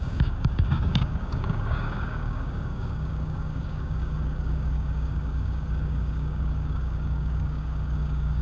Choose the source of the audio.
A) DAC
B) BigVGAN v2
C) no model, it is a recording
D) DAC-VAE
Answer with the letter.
A